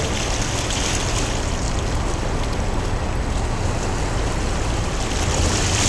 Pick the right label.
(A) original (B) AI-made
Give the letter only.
A